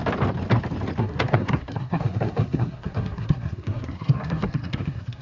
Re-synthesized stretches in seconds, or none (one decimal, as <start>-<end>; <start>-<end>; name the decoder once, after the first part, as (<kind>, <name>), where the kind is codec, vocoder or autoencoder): 1.0-5.2 (codec, SNAC)